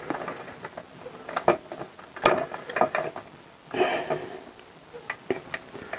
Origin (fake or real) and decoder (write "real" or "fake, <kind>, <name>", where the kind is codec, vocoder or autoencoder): real